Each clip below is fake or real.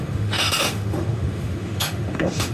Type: fake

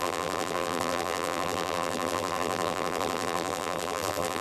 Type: fake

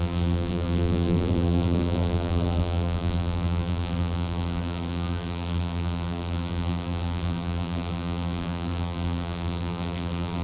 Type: fake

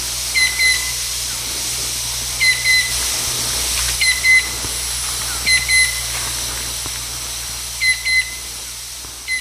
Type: real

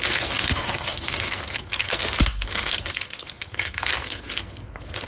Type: fake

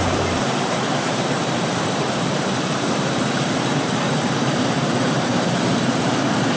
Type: fake